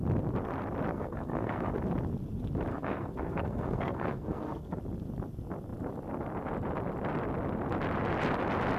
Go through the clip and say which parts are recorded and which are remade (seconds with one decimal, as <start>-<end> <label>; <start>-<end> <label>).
0.0-0.9 recorded; 0.9-1.7 remade; 1.7-2.7 recorded; 2.7-4.8 remade; 4.8-8.8 recorded